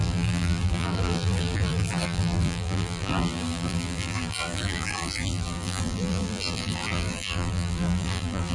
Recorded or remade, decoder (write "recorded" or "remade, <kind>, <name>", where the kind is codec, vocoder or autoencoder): remade, vocoder, BigVGAN v2